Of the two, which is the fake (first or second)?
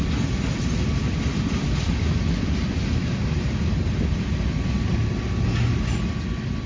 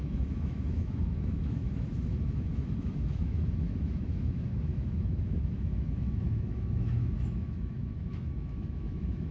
second